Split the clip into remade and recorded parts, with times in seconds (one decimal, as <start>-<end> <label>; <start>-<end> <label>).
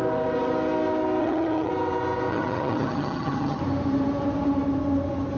0.0-1.2 recorded; 1.2-1.7 remade; 1.7-2.3 recorded; 2.3-3.6 remade; 3.6-5.4 recorded